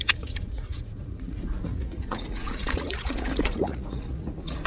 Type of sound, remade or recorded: remade